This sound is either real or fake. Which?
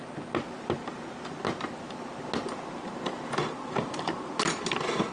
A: real